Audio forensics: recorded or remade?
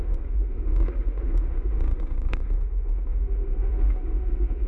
remade